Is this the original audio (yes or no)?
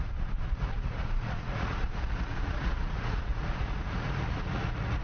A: no